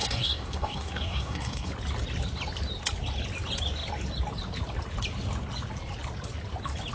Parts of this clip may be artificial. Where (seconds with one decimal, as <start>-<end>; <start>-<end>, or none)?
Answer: 0.0-1.7